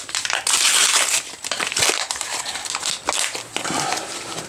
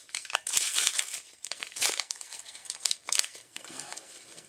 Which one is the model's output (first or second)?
second